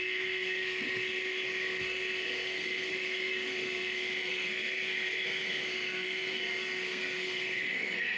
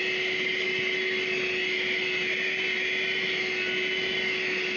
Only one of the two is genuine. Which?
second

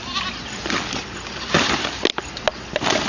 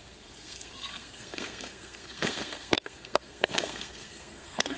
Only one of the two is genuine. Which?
first